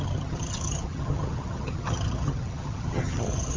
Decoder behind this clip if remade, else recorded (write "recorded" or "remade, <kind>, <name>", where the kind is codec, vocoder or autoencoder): remade, vocoder, HiFi-GAN